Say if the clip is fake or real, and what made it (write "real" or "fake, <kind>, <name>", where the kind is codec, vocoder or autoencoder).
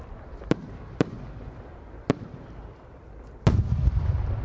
fake, vocoder, BigVGAN v2